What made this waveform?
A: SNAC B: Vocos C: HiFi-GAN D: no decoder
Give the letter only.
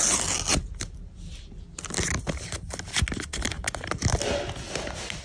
D